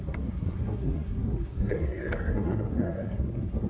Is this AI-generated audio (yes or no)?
yes